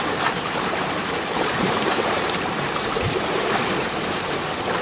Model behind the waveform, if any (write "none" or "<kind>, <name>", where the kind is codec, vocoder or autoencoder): vocoder, BigVGAN v2